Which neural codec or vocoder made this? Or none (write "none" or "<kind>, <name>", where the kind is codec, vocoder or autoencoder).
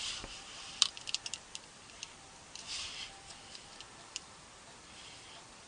vocoder, BigVGAN v2